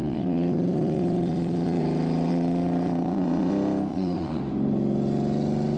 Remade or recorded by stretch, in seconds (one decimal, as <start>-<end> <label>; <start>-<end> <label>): 0.0-1.8 remade; 1.8-2.3 recorded; 2.3-3.5 remade; 3.5-3.9 recorded; 3.9-4.4 remade; 4.4-5.8 recorded